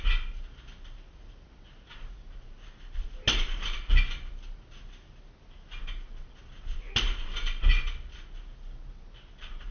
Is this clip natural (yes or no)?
yes